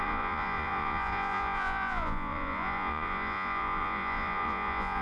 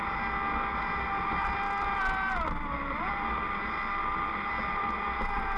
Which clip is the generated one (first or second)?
first